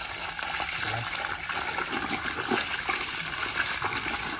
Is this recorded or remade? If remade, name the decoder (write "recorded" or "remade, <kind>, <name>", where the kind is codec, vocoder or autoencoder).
recorded